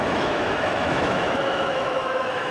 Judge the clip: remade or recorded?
remade